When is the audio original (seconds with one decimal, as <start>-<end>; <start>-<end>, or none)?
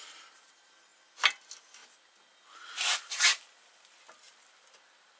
0.0-5.2